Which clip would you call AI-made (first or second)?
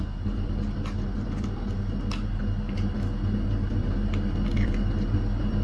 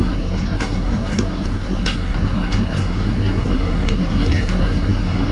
second